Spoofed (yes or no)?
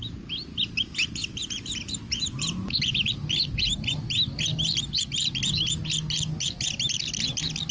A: no